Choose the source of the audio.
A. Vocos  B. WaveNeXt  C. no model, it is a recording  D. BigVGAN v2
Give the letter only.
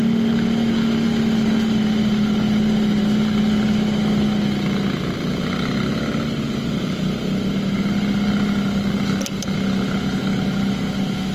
C